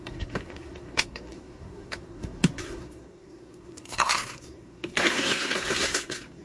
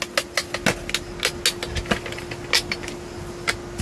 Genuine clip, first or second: second